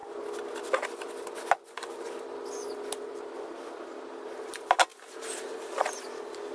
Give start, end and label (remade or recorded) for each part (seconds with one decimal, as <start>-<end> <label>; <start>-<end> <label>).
0.0-6.5 recorded